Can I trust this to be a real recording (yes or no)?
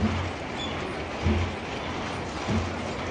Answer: yes